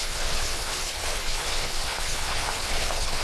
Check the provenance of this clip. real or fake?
fake